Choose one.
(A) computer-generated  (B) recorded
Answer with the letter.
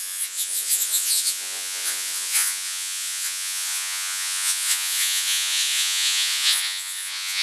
A